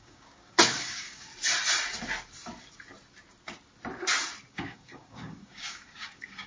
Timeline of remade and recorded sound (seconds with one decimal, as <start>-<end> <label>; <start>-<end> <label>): 0.0-1.3 remade; 1.3-4.5 recorded; 4.5-6.5 remade